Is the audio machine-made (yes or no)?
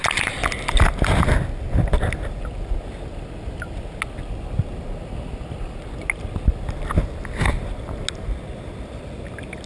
no